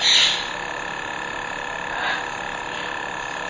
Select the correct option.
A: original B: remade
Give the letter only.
A